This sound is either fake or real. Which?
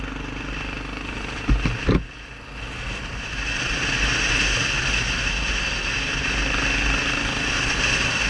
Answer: real